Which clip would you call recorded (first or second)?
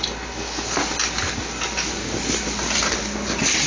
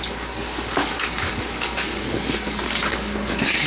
first